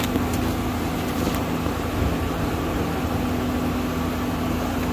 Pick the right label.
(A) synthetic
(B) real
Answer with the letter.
B